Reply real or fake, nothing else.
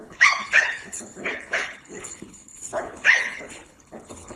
fake